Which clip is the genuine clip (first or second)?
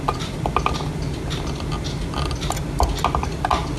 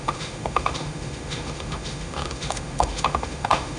first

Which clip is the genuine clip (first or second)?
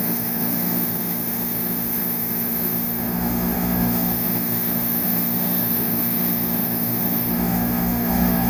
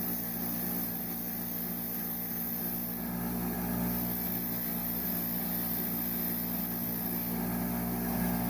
second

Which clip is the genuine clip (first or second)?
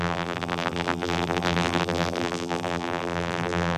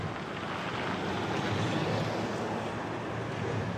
second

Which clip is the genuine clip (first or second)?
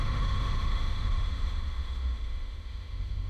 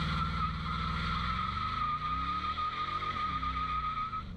second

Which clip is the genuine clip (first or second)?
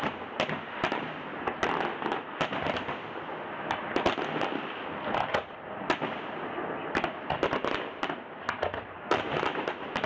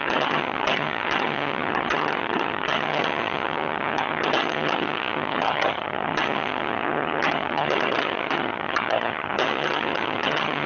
first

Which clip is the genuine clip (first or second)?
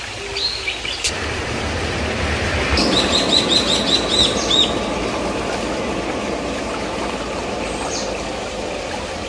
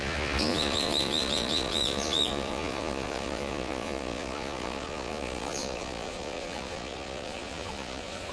first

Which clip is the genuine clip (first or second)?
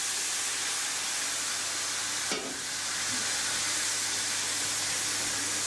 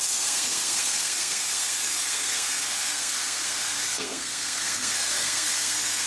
first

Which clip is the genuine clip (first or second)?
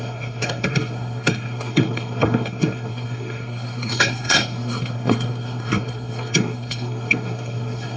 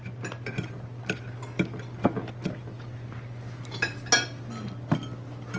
second